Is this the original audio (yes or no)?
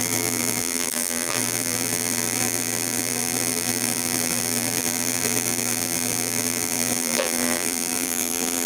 no